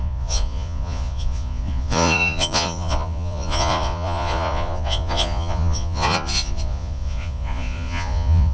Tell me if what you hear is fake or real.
fake